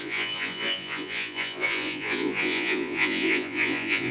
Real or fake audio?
fake